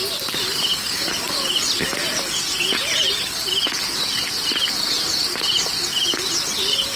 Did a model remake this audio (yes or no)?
no